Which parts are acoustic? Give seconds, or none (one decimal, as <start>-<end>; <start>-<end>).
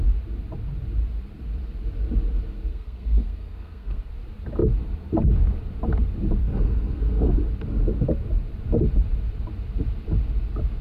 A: 0.0-2.7; 4.1-6.4; 7.3-10.8